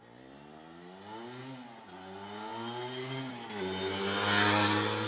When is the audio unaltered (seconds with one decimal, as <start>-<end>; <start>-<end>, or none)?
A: 0.0-5.1